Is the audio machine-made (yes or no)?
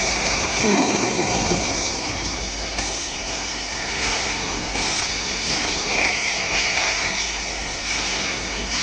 yes